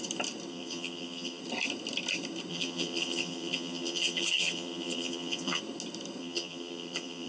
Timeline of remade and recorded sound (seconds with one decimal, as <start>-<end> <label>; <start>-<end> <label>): 0.0-0.5 recorded; 0.5-1.4 remade; 1.4-2.5 recorded; 2.5-5.6 remade; 5.6-6.2 recorded; 6.2-7.3 remade